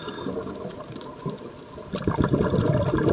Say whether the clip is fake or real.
fake